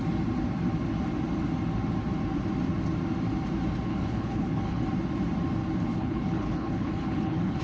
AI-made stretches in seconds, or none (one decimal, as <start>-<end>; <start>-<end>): 3.9-4.8; 5.9-7.6